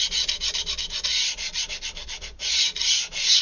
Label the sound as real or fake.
real